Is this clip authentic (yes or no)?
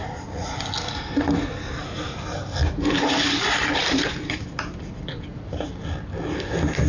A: yes